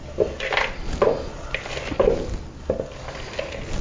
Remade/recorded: recorded